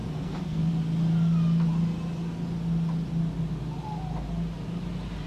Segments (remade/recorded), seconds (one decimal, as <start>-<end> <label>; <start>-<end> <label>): 0.0-0.7 remade; 0.7-5.3 recorded